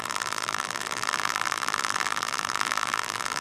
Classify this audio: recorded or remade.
remade